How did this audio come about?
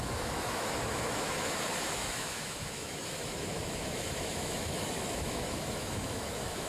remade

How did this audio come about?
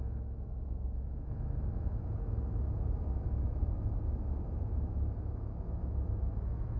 remade